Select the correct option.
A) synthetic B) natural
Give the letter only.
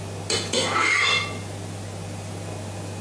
B